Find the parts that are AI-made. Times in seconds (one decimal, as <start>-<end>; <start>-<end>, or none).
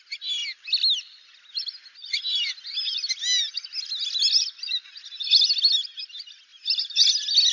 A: none